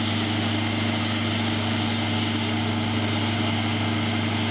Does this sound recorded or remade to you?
recorded